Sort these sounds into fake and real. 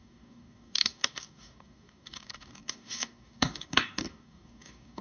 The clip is fake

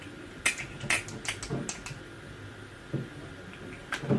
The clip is real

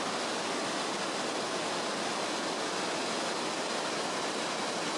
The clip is real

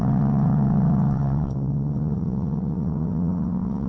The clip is fake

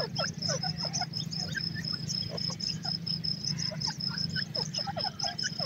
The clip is real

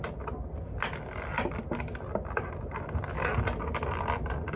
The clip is real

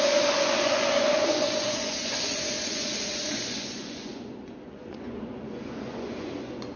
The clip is fake